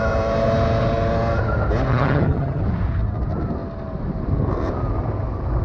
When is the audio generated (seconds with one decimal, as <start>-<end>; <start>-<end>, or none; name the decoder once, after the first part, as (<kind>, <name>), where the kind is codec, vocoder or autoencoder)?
1.9-2.6 (vocoder, HiFi-GAN)